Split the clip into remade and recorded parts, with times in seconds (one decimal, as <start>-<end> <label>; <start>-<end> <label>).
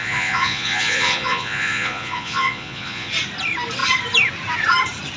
0.0-3.1 remade; 3.1-5.2 recorded